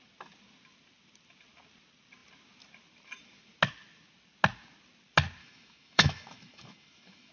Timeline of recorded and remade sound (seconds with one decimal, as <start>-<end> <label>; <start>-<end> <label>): 0.0-5.4 recorded; 5.4-7.3 remade